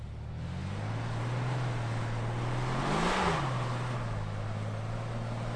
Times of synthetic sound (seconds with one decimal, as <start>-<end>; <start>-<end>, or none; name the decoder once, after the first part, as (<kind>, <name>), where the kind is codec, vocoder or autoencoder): none